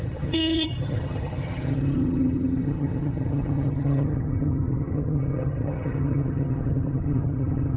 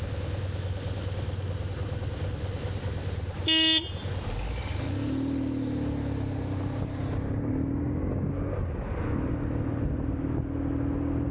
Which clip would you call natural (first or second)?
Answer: second